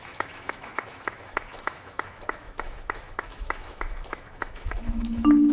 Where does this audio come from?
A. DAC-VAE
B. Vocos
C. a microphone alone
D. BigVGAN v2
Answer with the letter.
A